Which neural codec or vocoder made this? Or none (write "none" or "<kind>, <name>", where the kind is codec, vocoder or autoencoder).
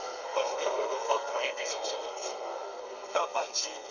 codec, SNAC